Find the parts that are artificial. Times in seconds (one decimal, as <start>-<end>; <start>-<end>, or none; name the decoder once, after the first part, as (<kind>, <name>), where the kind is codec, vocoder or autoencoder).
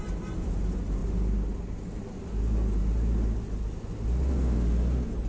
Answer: none